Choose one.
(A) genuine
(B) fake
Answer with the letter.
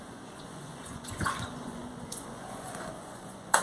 B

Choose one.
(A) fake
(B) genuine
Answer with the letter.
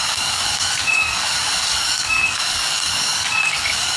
A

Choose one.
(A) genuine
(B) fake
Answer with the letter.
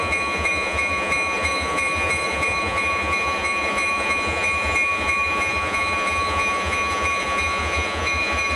B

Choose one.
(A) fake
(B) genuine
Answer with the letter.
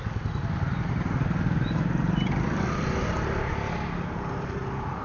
B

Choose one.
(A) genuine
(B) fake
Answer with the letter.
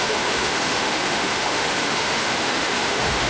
B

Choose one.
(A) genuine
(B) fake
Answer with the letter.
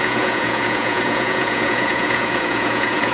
B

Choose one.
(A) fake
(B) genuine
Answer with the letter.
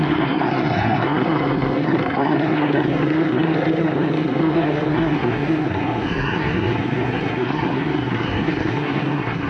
A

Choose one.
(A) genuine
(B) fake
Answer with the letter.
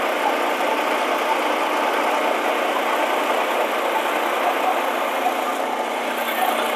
A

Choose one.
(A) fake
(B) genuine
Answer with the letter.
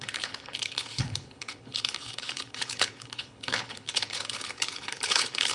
A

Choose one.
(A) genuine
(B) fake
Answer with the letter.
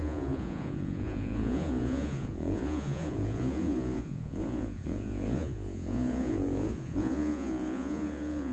B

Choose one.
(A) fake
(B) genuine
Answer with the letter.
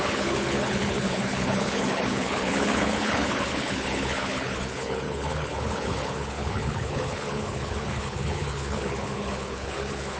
A